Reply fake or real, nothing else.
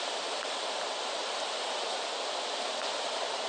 fake